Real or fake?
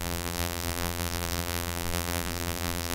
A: fake